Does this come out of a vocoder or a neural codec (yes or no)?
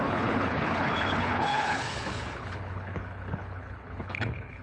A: yes